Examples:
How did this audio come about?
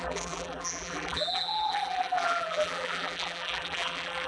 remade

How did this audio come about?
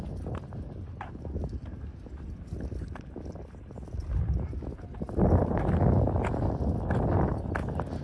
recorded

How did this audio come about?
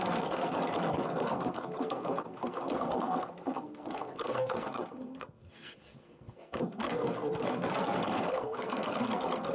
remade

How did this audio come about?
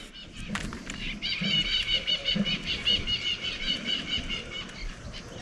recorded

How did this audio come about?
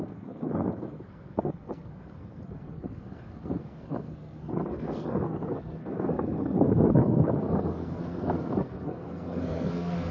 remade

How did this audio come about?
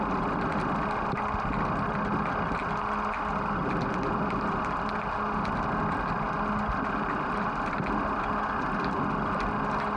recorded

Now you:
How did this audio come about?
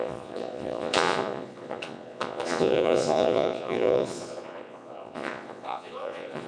remade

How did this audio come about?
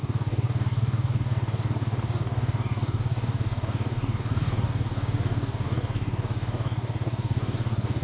remade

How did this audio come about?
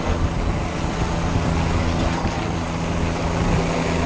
recorded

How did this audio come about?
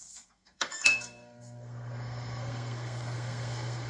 remade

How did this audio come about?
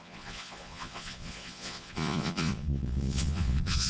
remade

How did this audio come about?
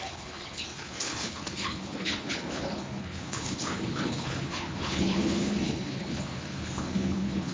remade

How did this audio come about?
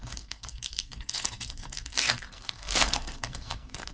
remade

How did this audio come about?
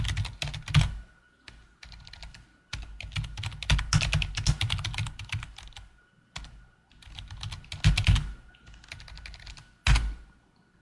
recorded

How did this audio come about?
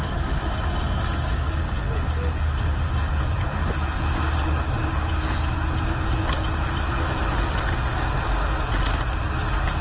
recorded